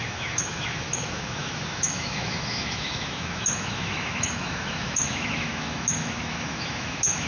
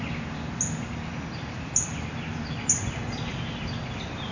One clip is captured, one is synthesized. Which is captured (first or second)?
second